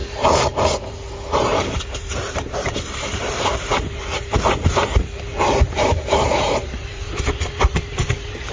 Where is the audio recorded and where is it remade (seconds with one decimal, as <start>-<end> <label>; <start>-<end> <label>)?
0.0-1.5 recorded; 1.5-4.6 remade; 4.6-5.9 recorded; 5.9-8.5 remade